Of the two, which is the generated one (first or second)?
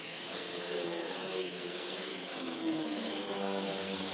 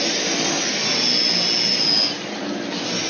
first